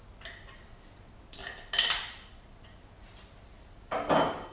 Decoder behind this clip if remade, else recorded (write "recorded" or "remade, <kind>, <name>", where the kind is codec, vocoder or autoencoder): recorded